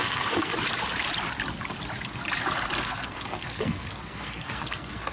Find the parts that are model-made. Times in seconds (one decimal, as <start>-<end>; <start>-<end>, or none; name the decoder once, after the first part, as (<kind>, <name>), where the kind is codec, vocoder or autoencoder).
0.0-0.5 (codec, SNAC); 2.8-5.1